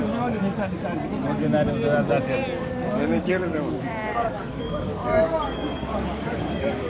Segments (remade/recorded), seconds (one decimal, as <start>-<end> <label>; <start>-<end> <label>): 0.0-0.4 remade; 0.4-2.6 recorded; 2.6-6.9 remade